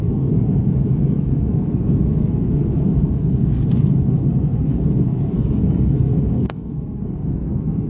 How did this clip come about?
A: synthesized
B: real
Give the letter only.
A